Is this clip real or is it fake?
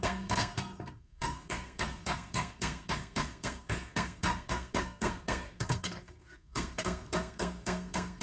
fake